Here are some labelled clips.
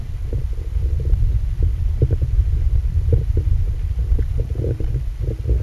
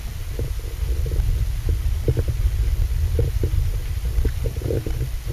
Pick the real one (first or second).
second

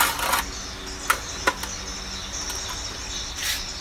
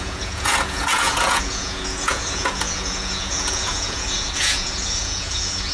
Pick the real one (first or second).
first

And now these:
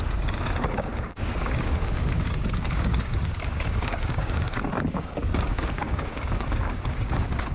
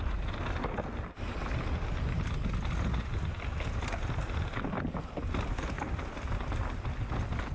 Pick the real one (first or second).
second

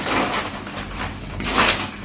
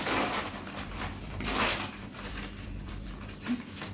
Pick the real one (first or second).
first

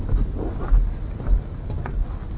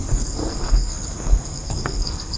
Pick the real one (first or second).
first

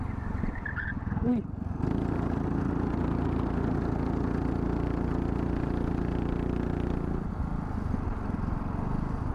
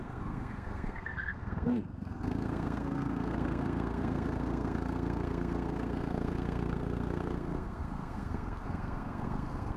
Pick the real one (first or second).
first